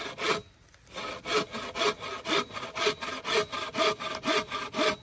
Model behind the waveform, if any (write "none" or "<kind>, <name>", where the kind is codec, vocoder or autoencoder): none